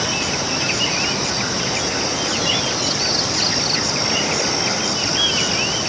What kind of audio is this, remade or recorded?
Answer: recorded